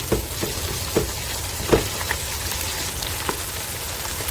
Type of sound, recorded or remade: recorded